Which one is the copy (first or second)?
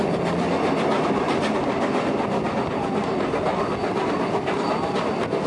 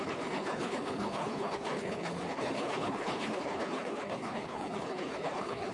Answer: second